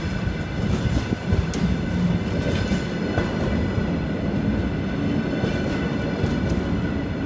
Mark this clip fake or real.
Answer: real